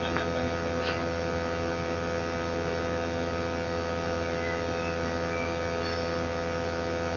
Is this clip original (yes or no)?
yes